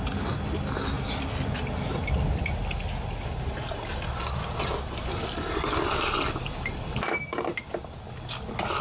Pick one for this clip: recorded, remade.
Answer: recorded